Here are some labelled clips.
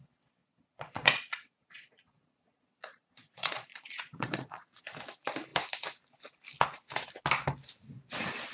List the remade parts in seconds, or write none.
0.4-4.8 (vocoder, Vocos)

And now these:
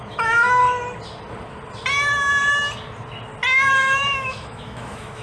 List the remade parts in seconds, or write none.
0.0-0.6 (autoencoder, DAC-VAE); 3.7-5.2